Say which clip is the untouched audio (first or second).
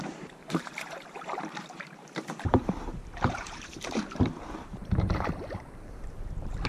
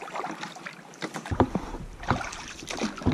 second